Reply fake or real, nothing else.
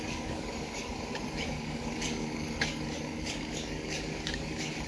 fake